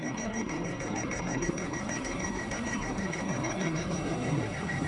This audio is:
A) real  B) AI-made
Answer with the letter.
B